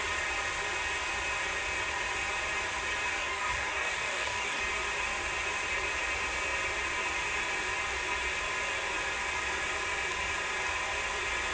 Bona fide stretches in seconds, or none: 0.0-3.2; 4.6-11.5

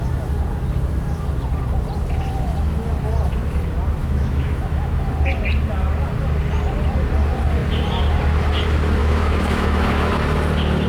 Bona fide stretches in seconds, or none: 0.0-4.0; 5.1-9.0; 10.1-10.9

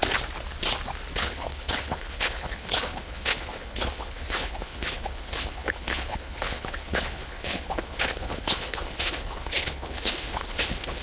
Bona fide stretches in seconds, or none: 0.0-1.2

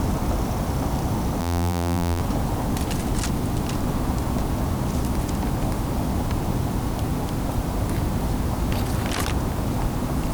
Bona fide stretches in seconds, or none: 0.0-1.4; 2.2-10.3

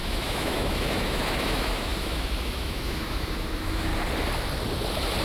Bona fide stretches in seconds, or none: 3.9-5.2